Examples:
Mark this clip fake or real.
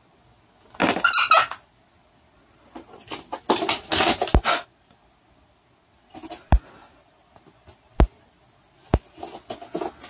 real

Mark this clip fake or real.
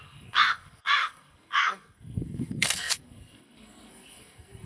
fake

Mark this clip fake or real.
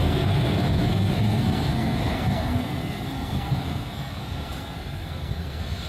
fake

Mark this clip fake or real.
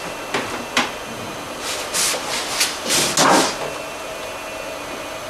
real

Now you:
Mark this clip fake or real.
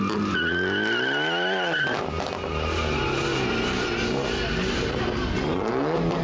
real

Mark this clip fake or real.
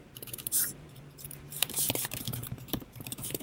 fake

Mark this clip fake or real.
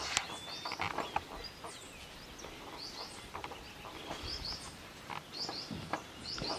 real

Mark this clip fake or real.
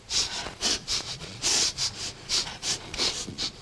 fake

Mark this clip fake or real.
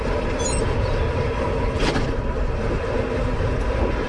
real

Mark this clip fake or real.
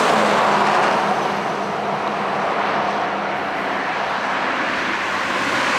real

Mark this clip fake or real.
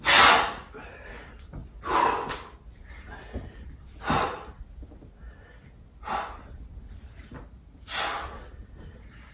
real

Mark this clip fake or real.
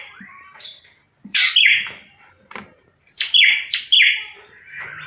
fake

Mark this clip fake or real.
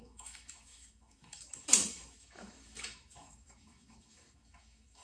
fake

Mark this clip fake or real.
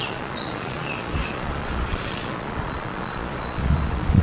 fake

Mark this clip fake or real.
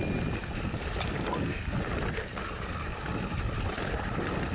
fake